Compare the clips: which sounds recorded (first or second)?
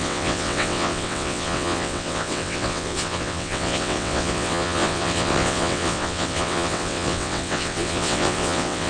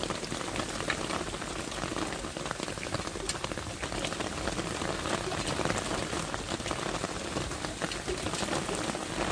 second